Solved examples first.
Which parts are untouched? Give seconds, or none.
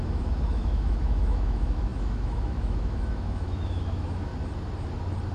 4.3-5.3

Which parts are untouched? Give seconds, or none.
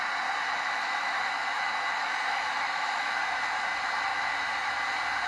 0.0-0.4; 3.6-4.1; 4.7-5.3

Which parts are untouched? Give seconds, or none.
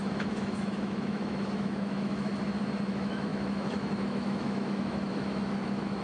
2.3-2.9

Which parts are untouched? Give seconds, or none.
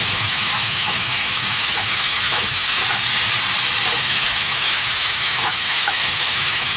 2.8-4.0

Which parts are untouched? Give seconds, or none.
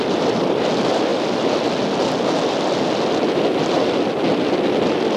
0.0-5.2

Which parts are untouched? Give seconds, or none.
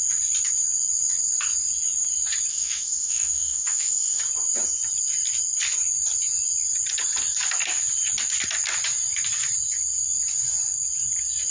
0.0-2.5; 4.2-11.5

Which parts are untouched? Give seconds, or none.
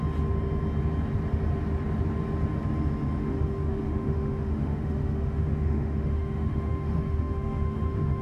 0.0-3.2